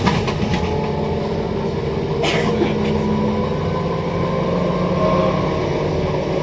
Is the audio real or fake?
real